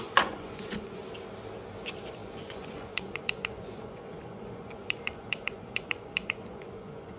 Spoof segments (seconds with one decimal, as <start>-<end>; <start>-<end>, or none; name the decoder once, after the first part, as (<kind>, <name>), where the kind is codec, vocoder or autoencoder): 0.0-1.0 (vocoder, Vocos); 1.7-7.2